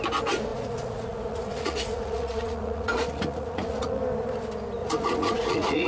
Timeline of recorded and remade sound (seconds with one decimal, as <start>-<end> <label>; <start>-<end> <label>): 0.0-0.5 recorded; 0.5-4.0 remade; 4.0-4.8 recorded; 4.8-5.9 remade